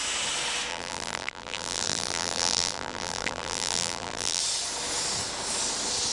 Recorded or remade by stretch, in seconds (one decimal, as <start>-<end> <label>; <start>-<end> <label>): 0.0-0.7 recorded; 0.7-4.4 remade; 4.4-6.1 recorded